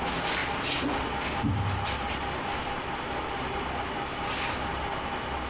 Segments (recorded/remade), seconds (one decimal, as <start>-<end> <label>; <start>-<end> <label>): 0.0-5.5 recorded